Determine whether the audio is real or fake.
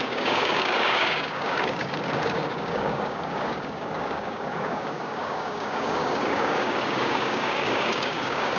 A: fake